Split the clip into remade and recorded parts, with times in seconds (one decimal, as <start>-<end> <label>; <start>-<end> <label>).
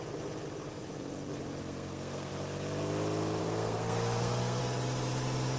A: 0.0-1.6 recorded; 1.6-2.3 remade; 2.3-3.4 recorded; 3.4-4.6 remade; 4.6-5.6 recorded